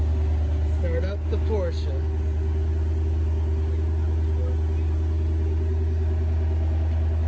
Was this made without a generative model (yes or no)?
yes